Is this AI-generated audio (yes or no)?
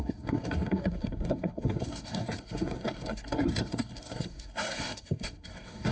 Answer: yes